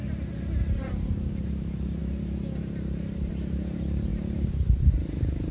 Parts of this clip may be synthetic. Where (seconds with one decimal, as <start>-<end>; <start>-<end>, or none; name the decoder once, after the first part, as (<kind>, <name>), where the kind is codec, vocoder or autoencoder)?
0.8-2.0 (vocoder, BigVGAN v2); 3.3-5.5